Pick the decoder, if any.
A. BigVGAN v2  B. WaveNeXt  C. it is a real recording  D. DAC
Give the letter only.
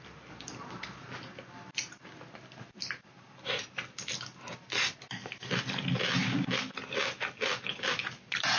C